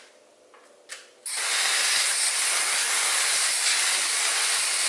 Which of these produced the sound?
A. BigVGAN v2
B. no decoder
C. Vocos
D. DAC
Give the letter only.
B